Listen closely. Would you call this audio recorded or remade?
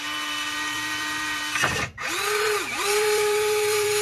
remade